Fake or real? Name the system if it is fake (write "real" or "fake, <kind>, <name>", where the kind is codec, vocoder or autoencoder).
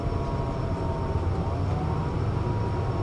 real